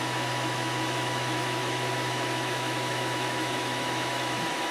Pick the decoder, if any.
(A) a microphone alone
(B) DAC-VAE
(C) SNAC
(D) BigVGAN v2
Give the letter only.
B